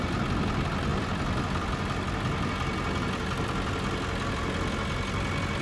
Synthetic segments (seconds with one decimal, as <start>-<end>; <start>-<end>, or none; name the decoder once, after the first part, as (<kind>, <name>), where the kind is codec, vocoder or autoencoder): none